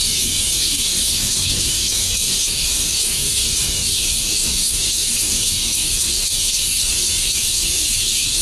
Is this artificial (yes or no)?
yes